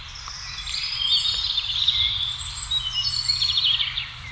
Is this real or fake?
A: real